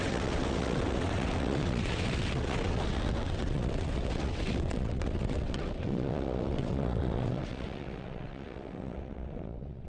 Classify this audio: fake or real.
fake